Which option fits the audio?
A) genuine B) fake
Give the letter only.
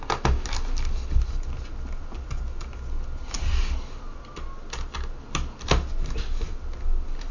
A